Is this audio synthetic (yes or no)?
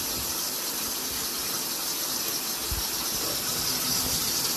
no